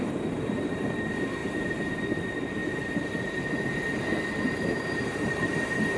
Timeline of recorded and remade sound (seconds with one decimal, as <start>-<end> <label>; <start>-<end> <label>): 0.0-2.6 remade; 2.6-4.2 recorded; 4.2-6.0 remade